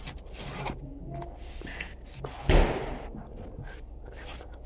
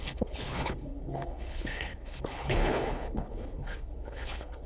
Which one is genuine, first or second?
first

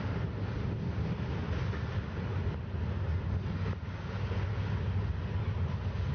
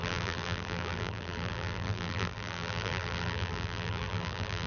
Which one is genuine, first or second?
first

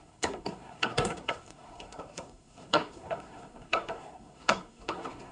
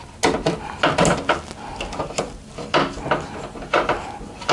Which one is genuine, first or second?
second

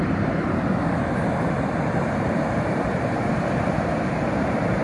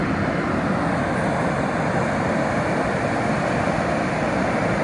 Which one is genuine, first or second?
second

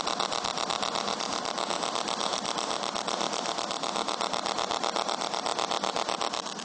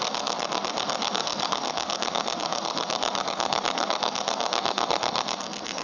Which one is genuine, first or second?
first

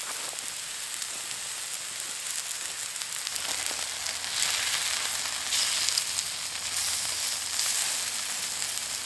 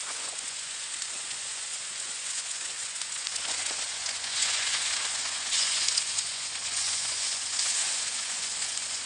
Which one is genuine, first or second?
first